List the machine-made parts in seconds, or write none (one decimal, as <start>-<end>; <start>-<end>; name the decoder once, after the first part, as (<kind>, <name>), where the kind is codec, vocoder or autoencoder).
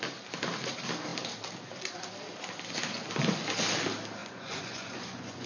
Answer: 4.2-5.5 (vocoder, Vocos)